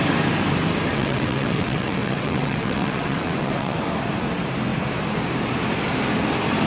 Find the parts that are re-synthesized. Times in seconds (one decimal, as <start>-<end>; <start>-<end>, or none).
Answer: 0.9-3.8